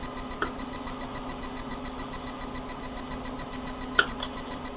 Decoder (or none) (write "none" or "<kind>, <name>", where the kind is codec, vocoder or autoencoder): none